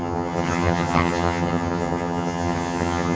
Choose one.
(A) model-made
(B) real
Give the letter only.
A